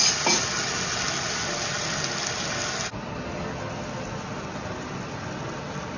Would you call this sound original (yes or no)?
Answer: yes